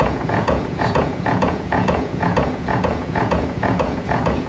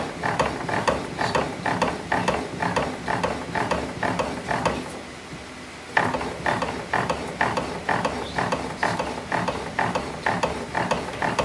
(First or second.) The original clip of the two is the second